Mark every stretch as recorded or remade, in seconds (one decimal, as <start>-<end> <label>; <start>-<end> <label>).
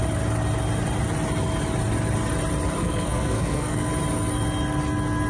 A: 0.0-2.8 recorded; 2.8-3.9 remade; 3.9-5.3 recorded